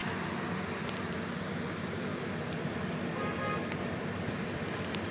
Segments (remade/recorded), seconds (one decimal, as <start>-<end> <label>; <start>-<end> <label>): 0.0-1.7 recorded; 1.7-2.1 remade; 2.1-4.2 recorded; 4.2-5.1 remade